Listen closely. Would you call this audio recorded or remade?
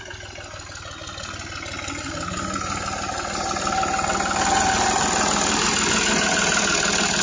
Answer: recorded